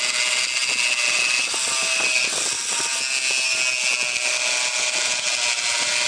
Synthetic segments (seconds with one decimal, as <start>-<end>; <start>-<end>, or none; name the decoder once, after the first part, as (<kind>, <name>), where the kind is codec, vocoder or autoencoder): none